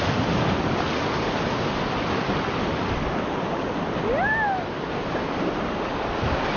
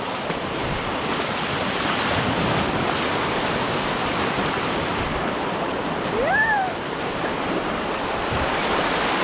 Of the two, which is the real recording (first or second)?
first